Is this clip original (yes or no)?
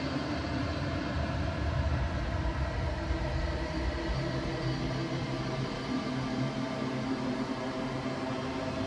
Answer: no